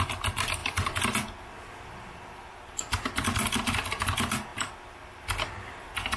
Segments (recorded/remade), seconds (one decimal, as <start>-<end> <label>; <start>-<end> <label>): 0.0-6.2 recorded